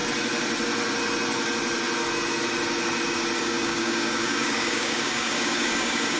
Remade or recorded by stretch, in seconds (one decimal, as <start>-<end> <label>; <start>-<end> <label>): 0.0-3.4 recorded; 3.4-6.2 remade